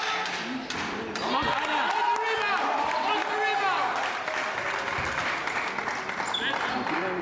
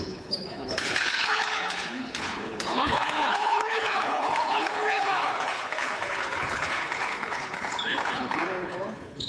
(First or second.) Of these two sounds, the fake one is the second